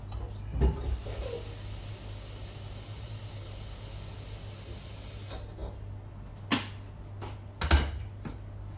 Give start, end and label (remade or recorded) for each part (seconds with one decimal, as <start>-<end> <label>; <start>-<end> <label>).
0.0-8.8 recorded